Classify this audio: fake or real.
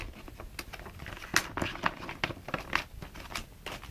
real